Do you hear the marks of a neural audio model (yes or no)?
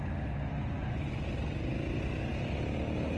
no